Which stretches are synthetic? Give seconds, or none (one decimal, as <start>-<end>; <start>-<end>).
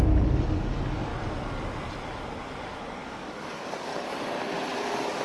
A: 0.0-1.1; 2.8-3.9; 4.8-5.2